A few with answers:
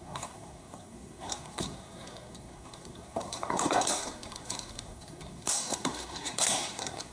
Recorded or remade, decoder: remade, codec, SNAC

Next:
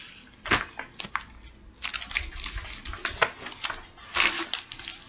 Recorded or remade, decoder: recorded